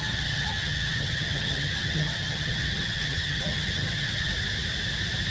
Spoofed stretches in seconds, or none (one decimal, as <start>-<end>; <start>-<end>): 0.0-4.3